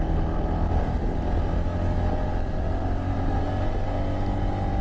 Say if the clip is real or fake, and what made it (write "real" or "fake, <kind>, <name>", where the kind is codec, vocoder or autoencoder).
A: real